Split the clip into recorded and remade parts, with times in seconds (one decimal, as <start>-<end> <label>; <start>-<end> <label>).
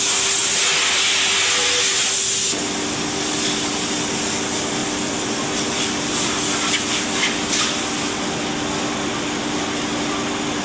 0.0-4.8 recorded; 4.8-6.1 remade; 6.1-10.6 recorded